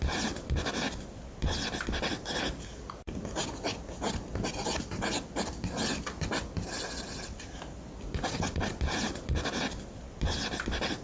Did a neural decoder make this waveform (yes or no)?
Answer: no